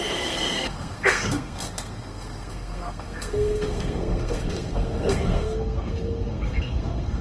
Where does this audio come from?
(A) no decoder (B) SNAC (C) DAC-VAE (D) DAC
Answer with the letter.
B